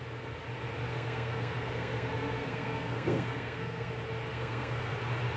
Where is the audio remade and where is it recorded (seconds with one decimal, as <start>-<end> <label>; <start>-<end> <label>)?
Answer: 0.0-0.9 recorded; 0.9-3.9 remade; 3.9-4.3 recorded; 4.3-4.9 remade; 4.9-5.4 recorded